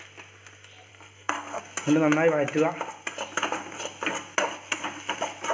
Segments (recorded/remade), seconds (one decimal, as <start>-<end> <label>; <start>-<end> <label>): 0.0-0.9 recorded; 0.9-1.6 remade; 1.6-5.5 recorded